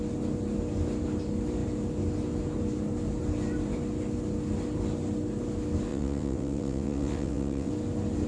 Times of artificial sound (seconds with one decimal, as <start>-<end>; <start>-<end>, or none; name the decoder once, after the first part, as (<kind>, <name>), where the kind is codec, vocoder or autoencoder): 5.9-7.7 (vocoder, WaveNeXt)